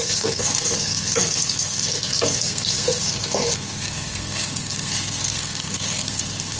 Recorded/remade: remade